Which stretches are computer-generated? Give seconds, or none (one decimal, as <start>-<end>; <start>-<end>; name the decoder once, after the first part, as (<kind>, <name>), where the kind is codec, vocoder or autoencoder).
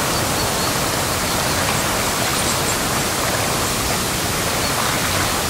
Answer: none